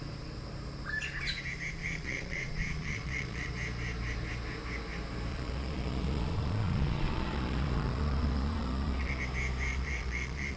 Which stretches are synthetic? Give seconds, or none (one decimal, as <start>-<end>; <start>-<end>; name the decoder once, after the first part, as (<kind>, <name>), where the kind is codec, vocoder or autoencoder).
1.8-3.5 (vocoder, Vocos); 5.3-9.2; 9.7-10.6